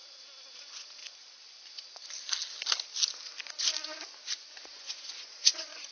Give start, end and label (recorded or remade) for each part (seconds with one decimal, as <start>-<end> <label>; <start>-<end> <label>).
0.0-0.6 recorded; 0.6-1.0 remade; 1.0-4.5 recorded; 4.5-5.9 remade